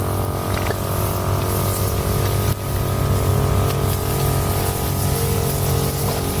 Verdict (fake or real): real